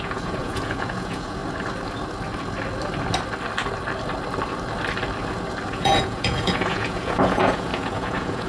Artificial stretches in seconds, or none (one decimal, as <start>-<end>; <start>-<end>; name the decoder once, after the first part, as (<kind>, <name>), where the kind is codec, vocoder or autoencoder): 0.0-1.4 (vocoder, Vocos); 5.7-8.5